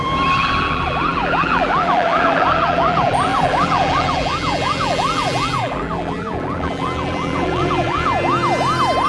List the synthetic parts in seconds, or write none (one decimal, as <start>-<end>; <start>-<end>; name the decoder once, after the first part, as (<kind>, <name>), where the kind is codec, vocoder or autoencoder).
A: 0.0-8.1 (vocoder, BigVGAN v2)